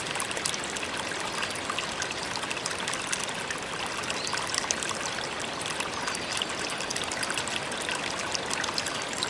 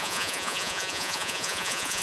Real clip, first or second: first